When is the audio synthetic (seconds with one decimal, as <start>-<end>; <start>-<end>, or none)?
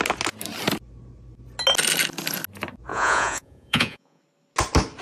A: 2.9-4.2